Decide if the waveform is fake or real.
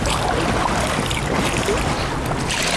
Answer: real